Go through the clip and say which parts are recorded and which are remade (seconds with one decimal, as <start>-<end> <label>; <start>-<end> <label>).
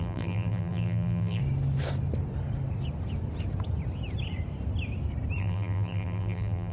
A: 0.0-1.4 remade; 1.4-5.4 recorded; 5.4-6.7 remade